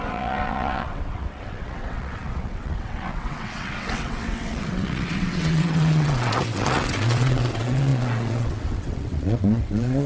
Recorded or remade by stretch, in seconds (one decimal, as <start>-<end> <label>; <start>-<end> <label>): 0.0-10.1 remade